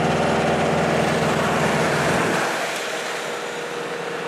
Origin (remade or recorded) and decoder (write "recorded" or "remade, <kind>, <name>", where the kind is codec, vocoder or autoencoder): recorded